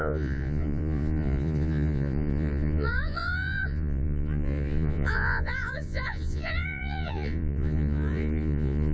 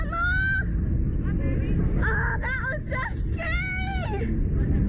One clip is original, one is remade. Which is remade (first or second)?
first